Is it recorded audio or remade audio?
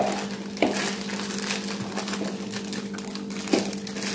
recorded